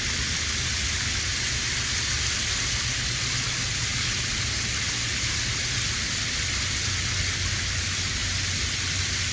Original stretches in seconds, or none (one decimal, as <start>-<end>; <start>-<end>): 0.0-9.3